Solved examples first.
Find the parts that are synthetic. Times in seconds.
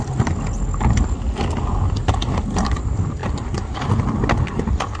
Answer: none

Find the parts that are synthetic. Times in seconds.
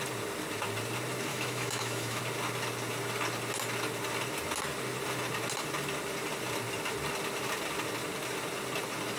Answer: 1.3-2.2 (autoencoder, DAC-VAE)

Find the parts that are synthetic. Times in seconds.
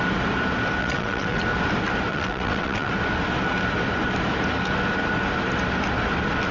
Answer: 0.8-1.4 (vocoder, WaveNeXt); 2.1-2.9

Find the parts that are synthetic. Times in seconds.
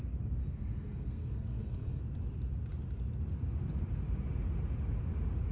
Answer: 0.4-2.0 (codec, SNAC)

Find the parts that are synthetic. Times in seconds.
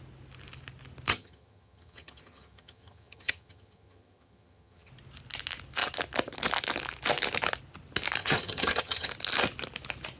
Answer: 1.1-4.9 (vocoder, HiFi-GAN); 8.2-9.1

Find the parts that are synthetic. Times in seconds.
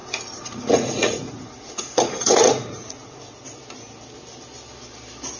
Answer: 0.0-3.2 (vocoder, Vocos)